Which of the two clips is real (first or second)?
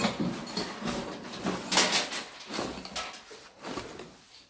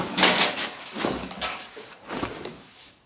first